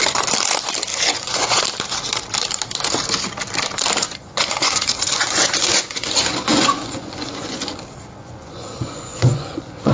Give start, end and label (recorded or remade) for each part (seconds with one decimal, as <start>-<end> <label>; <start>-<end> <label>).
0.0-0.9 recorded; 0.9-1.6 remade; 1.6-4.0 recorded; 4.0-7.8 remade; 7.8-8.2 recorded; 8.2-9.9 remade

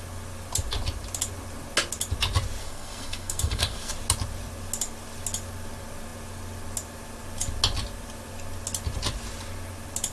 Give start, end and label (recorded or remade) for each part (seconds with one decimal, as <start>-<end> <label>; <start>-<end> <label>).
0.0-2.6 recorded; 2.6-3.9 remade; 3.9-10.1 recorded